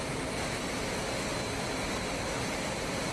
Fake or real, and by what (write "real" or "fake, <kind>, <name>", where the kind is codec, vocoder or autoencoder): real